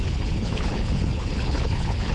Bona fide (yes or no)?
no